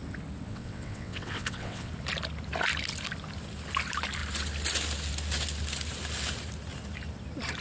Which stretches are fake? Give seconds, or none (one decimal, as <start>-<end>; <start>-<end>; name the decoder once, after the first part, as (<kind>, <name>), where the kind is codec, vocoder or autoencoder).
0.5-1.9 (vocoder, WaveNeXt)